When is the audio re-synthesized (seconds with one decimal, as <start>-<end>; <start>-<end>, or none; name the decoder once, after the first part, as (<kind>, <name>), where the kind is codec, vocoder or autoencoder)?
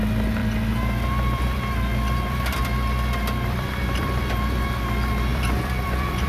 0.4-4.2 (vocoder, BigVGAN v2); 5.3-6.3